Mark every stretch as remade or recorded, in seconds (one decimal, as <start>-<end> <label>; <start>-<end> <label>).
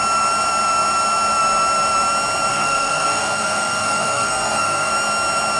0.0-2.5 recorded; 2.5-4.9 remade; 4.9-5.6 recorded